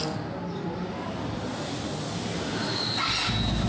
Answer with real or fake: real